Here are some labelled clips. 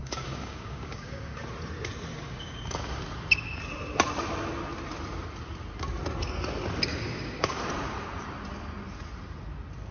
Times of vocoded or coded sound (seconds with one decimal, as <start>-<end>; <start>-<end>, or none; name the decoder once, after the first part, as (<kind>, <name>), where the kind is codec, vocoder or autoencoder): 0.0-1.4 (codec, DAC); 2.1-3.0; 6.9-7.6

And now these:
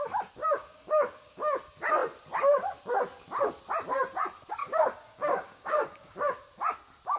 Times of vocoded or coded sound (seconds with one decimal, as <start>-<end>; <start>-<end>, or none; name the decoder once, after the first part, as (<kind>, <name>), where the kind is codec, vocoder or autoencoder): 0.4-1.6 (codec, DAC); 4.6-6.3

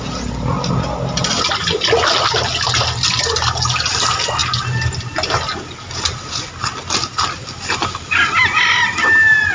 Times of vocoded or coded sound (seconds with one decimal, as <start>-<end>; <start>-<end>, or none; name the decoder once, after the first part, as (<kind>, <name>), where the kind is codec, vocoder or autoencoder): none

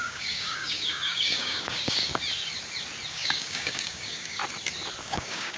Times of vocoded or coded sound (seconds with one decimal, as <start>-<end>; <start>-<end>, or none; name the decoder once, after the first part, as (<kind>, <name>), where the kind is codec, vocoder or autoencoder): 0.0-2.1 (codec, DAC); 3.1-4.4; 5.0-5.6

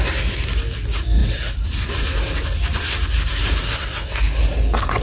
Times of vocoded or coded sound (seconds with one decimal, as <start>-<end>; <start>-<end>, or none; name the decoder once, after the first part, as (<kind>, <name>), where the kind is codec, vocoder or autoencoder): none

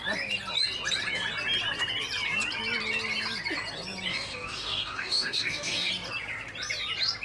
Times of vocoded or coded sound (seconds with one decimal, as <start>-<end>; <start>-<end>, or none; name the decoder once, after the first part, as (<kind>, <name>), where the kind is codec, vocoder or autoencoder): 4.1-5.9 (codec, DAC)

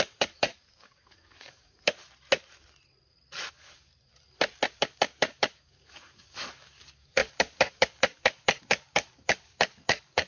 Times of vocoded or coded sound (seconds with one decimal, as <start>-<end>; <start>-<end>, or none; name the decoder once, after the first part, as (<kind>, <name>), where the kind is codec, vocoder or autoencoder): 0.0-2.0 (codec, DAC); 3.5-3.9; 4.7-10.3